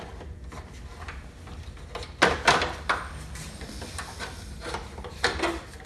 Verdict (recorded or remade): recorded